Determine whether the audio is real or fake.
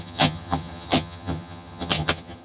fake